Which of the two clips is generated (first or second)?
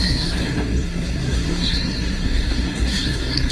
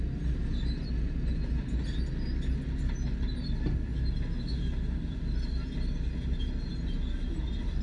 first